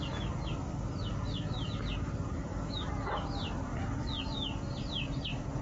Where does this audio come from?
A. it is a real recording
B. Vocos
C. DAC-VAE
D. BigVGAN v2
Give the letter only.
A